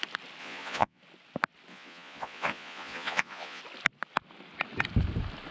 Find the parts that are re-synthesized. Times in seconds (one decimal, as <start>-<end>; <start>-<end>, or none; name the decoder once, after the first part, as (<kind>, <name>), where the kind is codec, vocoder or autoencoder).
0.4-1.0 (vocoder, Vocos); 1.7-3.6